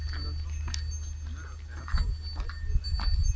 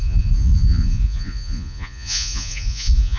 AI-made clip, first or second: second